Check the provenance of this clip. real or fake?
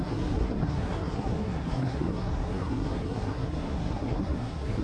fake